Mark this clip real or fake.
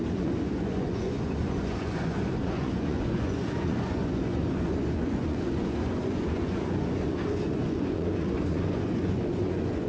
fake